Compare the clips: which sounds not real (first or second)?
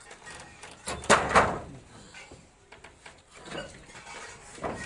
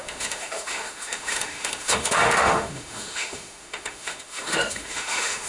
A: second